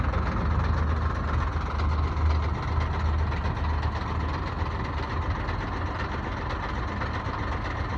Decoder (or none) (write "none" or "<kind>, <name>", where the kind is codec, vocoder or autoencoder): none